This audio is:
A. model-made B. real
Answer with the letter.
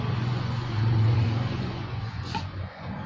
A